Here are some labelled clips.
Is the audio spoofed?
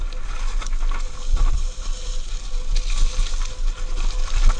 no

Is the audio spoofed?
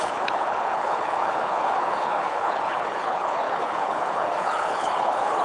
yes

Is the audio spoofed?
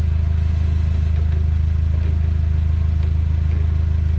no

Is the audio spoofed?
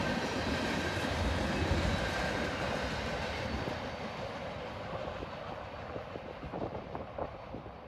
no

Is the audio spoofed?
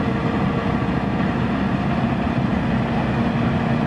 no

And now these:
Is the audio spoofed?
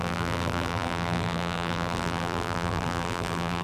yes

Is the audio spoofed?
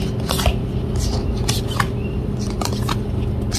yes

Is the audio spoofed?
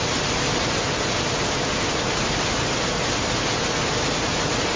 no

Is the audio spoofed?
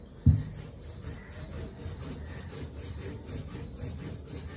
no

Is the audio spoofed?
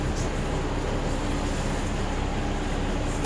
no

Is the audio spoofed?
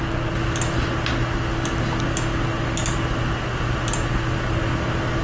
no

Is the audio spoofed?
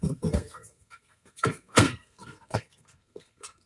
yes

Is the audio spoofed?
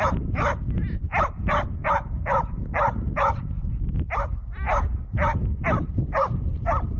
no